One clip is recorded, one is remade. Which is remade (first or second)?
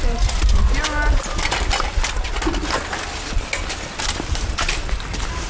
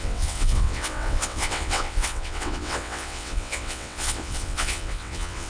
second